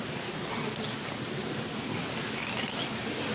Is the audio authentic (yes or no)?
yes